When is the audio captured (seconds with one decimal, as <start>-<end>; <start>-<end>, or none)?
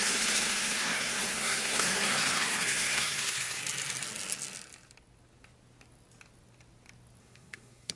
3.6-7.2